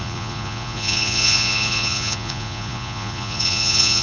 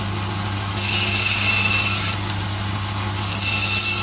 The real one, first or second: second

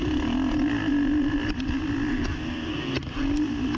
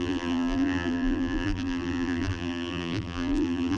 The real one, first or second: first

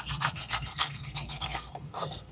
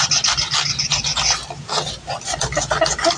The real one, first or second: second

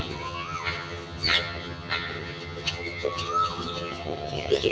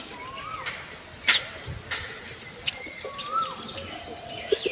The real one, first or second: second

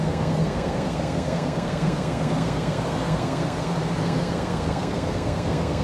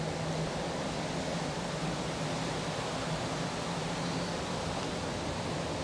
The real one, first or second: second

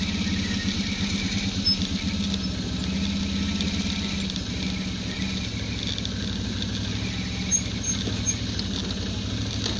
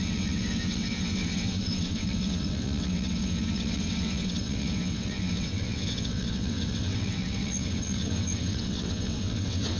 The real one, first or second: first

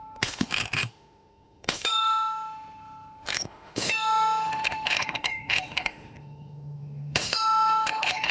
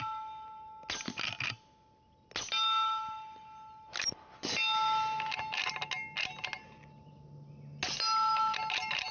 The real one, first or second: second